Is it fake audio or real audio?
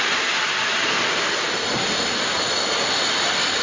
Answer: real